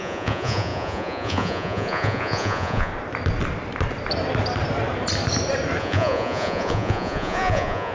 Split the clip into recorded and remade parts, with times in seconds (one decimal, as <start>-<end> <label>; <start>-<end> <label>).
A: 0.0-2.9 remade; 2.9-5.8 recorded; 5.8-7.9 remade